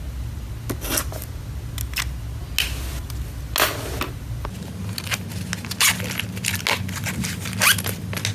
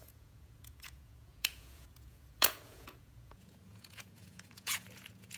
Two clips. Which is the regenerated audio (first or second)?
second